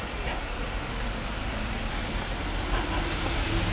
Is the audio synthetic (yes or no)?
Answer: no